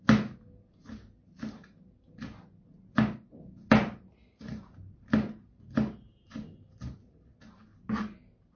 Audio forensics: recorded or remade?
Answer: recorded